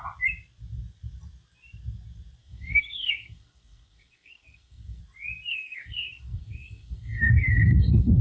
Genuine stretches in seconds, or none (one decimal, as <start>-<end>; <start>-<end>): 0.0-2.4; 5.0-5.5